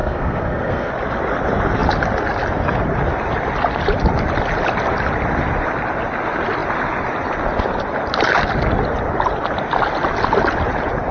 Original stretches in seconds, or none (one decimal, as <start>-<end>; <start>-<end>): 0.9-11.1